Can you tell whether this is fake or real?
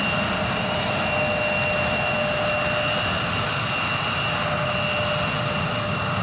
real